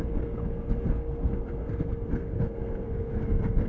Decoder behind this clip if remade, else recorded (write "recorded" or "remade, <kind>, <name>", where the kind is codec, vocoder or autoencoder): remade, codec, SNAC